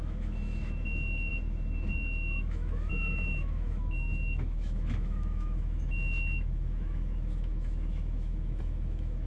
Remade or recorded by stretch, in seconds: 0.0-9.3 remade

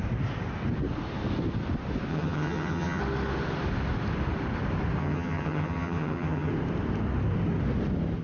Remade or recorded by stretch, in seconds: 0.0-2.1 recorded; 2.1-3.0 remade; 3.0-5.0 recorded; 5.0-6.5 remade; 6.5-8.2 recorded

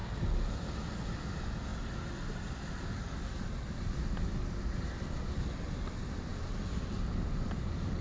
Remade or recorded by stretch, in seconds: 0.0-8.0 recorded

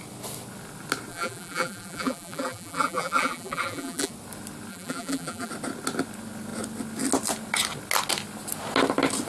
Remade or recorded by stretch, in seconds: 0.0-1.1 recorded; 1.1-4.1 remade; 4.1-4.7 recorded; 4.7-5.5 remade; 5.5-9.3 recorded